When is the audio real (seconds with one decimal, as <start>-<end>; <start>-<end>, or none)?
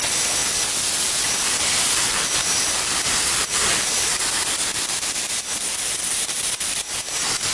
0.0-7.5